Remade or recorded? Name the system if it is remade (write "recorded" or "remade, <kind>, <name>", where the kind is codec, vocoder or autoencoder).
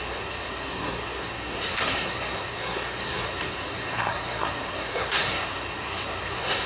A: remade, codec, SNAC